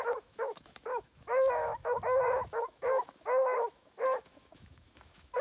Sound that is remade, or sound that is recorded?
remade